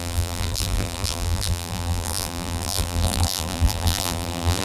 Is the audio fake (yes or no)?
yes